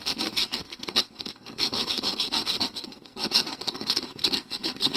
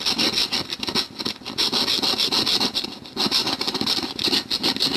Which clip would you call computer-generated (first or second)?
first